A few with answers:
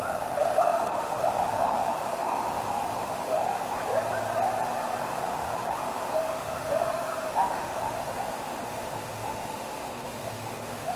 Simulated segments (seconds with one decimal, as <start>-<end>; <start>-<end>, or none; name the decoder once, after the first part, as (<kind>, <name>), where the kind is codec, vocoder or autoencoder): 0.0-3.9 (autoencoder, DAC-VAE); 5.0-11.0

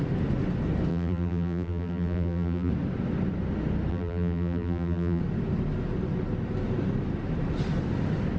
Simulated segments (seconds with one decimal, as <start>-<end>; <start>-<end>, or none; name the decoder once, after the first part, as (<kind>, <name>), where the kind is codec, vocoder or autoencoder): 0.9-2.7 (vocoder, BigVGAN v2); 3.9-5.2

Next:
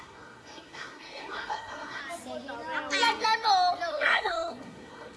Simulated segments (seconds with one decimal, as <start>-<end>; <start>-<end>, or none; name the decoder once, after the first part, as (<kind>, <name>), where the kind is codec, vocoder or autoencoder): 0.0-2.0 (codec, SNAC); 3.9-5.2

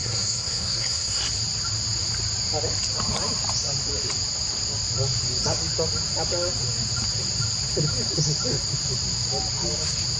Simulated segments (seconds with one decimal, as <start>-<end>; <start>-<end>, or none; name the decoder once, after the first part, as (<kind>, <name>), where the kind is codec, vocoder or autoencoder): 0.0-1.2 (codec, SNAC)